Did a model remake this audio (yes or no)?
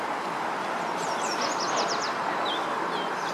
yes